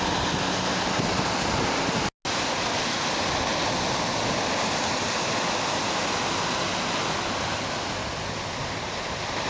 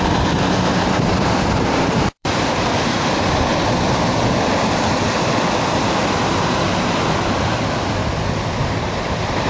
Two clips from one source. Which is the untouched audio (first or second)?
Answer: first